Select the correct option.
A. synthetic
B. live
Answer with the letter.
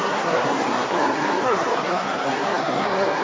A